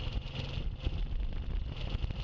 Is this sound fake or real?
real